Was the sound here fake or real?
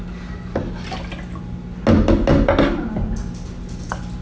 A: real